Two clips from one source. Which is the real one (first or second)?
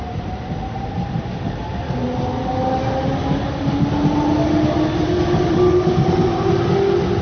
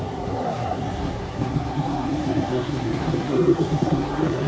first